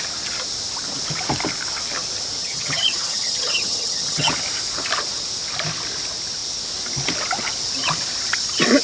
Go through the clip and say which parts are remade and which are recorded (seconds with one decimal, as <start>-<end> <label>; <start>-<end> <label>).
0.0-2.4 recorded; 2.4-4.3 remade; 4.3-8.8 recorded